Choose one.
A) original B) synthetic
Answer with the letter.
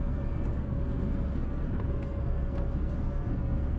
B